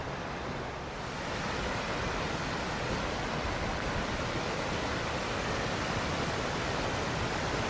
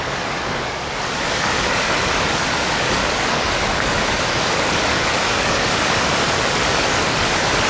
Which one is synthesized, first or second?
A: second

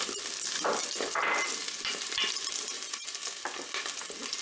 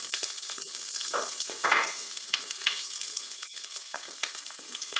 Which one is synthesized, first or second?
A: second